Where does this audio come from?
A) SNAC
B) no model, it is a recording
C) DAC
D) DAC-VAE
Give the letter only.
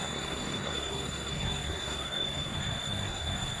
A